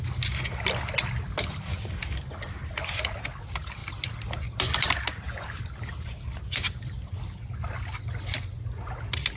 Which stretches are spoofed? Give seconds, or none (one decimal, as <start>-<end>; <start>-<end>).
none